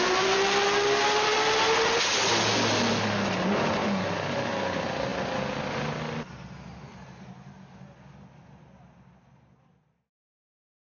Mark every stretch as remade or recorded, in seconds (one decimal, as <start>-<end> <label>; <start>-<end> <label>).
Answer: 0.0-10.9 recorded